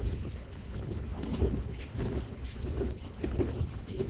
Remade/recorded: remade